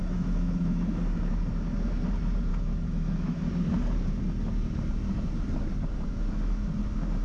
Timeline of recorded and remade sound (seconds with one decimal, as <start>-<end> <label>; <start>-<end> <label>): 0.0-1.0 remade; 1.0-2.5 recorded; 2.5-3.5 remade; 3.5-7.2 recorded